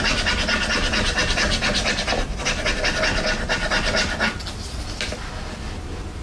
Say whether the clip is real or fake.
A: real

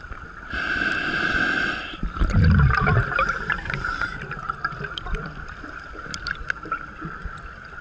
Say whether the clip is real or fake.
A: fake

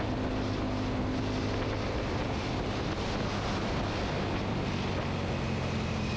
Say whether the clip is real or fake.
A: real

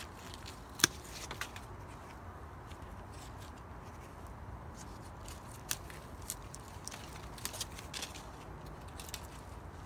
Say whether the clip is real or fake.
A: real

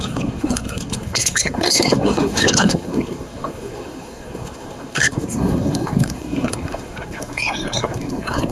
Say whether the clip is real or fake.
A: fake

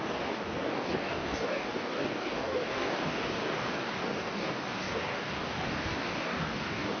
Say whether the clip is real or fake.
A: fake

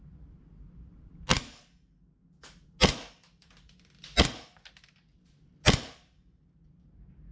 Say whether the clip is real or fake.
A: real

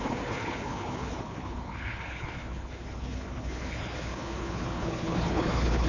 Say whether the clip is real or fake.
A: fake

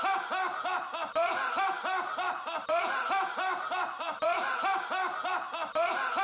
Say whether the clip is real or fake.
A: fake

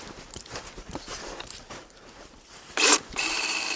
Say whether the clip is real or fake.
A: fake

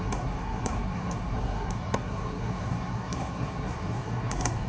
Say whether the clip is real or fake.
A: fake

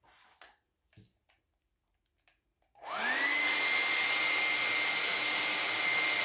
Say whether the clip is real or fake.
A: real